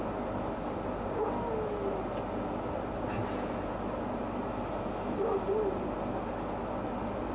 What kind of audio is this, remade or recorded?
recorded